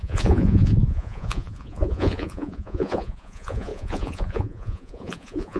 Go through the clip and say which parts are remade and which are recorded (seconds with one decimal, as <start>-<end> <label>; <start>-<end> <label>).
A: 0.0-5.6 remade